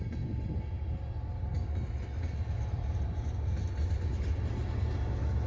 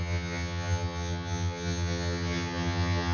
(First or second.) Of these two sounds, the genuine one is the first